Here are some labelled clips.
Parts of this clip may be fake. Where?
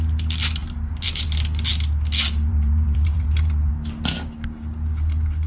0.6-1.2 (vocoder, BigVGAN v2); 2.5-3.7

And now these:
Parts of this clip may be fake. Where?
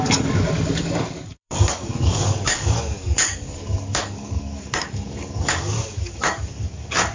0.0-7.1 (codec, DAC)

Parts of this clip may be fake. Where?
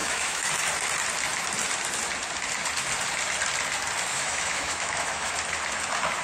0.0-0.5 (autoencoder, DAC-VAE); 4.1-5.3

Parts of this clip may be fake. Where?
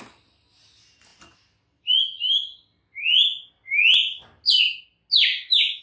none